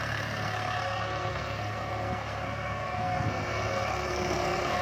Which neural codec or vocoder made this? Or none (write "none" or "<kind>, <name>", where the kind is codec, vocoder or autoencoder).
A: codec, SNAC